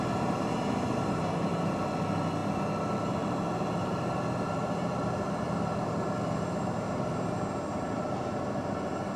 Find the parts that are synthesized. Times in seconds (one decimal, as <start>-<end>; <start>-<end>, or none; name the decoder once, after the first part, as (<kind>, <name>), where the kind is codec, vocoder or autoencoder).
0.0-2.4 (vocoder, BigVGAN v2); 3.1-9.2